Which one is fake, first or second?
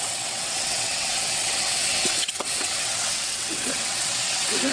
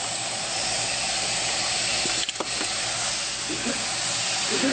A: first